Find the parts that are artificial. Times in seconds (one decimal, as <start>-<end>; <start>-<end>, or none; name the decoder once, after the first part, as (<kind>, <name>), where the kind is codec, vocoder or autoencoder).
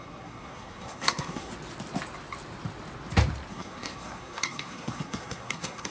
0.0-1.5 (codec, SNAC); 3.5-5.9